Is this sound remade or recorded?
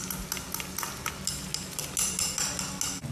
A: recorded